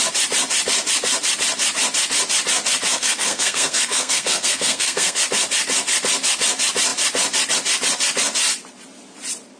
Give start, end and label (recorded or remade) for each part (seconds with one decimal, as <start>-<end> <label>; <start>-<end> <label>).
0.0-2.9 recorded; 2.9-5.2 remade; 5.2-9.6 recorded